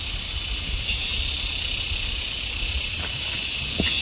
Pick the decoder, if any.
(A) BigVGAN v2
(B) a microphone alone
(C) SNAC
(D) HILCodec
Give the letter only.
B